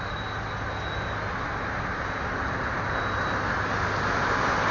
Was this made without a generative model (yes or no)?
yes